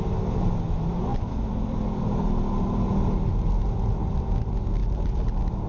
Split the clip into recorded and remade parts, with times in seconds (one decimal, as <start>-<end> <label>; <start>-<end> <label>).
0.0-1.1 recorded; 1.1-2.1 remade; 2.1-4.8 recorded; 4.8-5.3 remade; 5.3-5.7 recorded